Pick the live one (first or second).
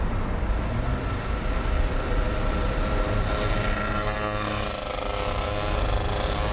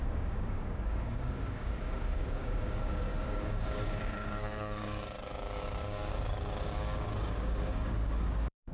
first